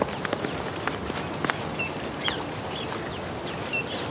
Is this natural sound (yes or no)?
yes